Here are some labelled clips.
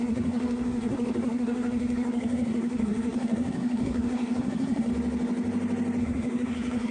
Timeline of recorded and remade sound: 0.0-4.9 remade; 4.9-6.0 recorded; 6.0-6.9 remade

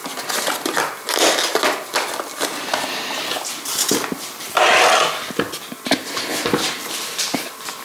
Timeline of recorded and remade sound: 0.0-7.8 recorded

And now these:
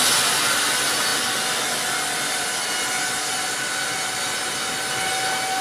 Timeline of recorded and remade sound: 0.0-5.6 recorded

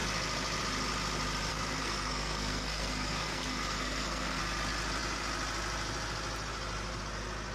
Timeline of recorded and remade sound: 0.0-1.5 recorded; 1.5-4.4 remade; 4.4-7.5 recorded